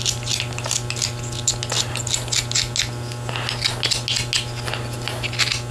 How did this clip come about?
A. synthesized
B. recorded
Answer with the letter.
B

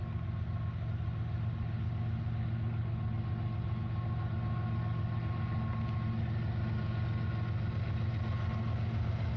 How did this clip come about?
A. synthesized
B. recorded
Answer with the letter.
B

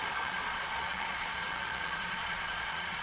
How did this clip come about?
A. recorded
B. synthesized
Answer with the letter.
B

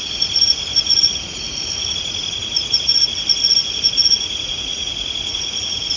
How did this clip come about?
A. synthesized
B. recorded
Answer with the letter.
A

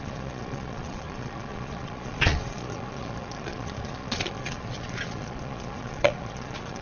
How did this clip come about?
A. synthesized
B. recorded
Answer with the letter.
A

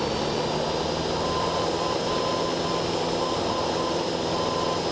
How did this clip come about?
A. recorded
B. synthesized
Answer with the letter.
A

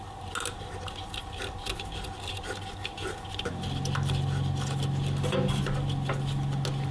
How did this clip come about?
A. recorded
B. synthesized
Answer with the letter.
A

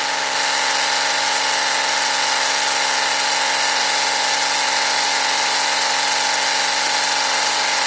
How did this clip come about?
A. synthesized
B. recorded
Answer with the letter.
B